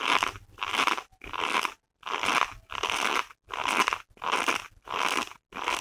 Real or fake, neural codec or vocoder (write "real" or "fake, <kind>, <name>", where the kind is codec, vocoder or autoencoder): real